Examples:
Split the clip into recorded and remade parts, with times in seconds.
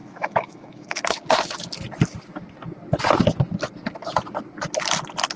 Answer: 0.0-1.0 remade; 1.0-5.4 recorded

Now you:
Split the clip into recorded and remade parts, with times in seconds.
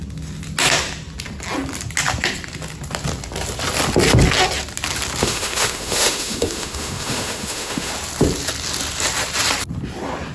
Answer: 0.0-5.2 recorded; 5.2-7.9 remade; 7.9-10.3 recorded